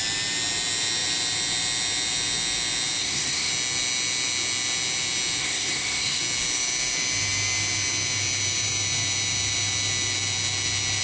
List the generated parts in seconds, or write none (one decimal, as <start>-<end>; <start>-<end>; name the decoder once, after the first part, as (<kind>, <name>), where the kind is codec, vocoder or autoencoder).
3.0-3.5 (codec, SNAC); 5.4-6.2